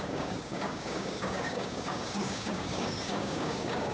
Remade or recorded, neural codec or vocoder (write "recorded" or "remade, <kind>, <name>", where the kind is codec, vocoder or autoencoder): remade, codec, DAC